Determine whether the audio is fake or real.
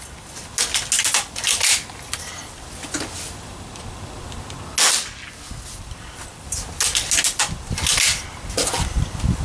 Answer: real